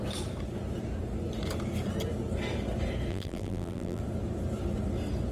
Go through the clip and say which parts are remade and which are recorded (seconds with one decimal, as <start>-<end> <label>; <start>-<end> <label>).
0.0-3.1 recorded; 3.1-4.0 remade; 4.0-5.3 recorded

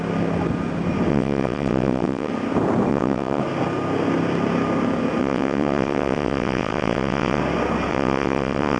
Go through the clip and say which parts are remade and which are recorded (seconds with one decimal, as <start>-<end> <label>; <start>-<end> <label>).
0.0-1.1 recorded; 1.1-2.3 remade; 2.3-2.9 recorded; 2.9-3.4 remade; 3.4-5.2 recorded; 5.2-7.4 remade; 7.4-7.9 recorded; 7.9-8.8 remade

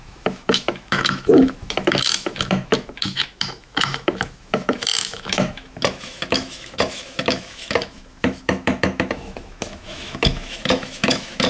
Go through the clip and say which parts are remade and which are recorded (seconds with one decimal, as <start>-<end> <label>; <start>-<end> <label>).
0.0-11.5 remade